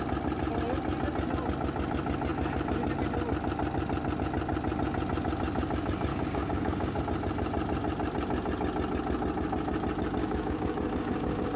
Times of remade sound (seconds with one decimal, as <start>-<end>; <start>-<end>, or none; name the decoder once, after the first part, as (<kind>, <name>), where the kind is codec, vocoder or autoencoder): 6.1-7.0 (codec, DAC); 10.2-11.6